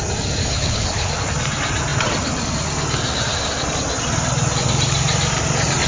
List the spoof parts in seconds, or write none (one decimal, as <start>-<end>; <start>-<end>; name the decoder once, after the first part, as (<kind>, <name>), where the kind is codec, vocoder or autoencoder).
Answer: 0.4-1.1 (codec, HILCodec)